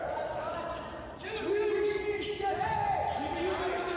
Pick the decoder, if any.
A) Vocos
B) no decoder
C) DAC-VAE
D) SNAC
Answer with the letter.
B